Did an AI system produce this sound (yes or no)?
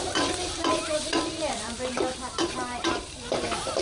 yes